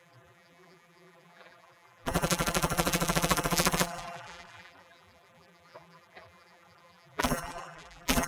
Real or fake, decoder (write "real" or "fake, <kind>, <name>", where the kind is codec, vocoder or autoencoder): fake, vocoder, BigVGAN v2